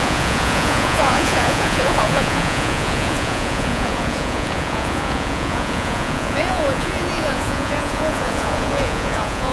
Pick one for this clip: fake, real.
fake